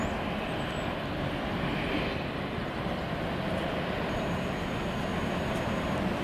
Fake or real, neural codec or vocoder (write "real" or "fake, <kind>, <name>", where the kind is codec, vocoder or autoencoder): real